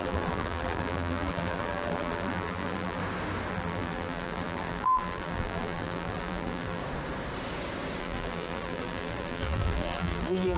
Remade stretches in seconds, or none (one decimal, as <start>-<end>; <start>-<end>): 0.0-3.0; 3.5-6.8; 8.0-10.6

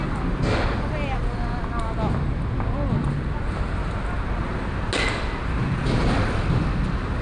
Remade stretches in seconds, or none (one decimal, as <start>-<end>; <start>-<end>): none

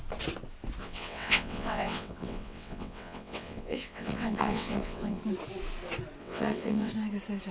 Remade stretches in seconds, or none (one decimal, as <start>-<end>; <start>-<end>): 0.8-5.2; 6.2-6.9

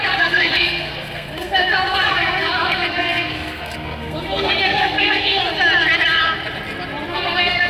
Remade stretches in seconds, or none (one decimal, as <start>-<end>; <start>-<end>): 0.0-5.4; 7.1-7.7

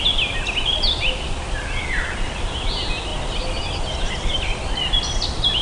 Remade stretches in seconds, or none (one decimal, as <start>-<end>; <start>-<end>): none

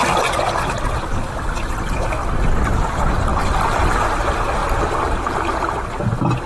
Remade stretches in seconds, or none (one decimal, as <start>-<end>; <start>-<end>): none

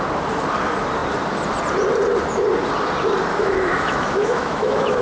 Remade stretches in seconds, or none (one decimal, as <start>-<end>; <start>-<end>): 3.3-5.0

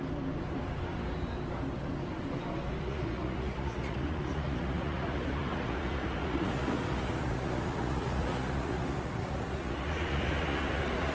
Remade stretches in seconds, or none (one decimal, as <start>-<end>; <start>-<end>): 2.8-11.1